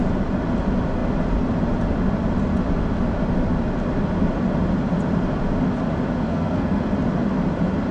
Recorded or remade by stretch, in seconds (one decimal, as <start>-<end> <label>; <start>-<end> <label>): 0.0-6.3 recorded; 6.3-6.8 remade; 6.8-7.9 recorded